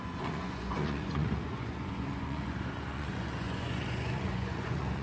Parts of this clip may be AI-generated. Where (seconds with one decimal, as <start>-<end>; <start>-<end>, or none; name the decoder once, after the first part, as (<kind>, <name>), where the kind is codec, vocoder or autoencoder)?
0.0-5.0 (vocoder, Vocos)